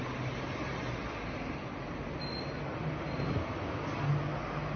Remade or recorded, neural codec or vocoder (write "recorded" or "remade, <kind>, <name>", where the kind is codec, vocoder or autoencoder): recorded